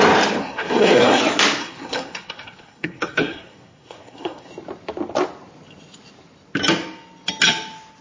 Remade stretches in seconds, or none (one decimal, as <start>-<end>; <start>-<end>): 0.4-1.2; 1.6-4.5